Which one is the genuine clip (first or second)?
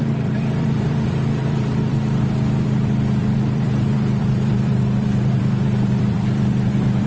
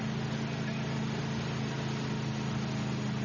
second